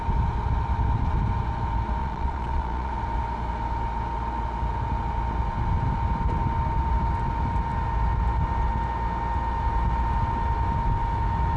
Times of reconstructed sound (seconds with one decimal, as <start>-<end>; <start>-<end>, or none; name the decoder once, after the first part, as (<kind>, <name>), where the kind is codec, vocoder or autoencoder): 2.0-2.9 (vocoder, Vocos)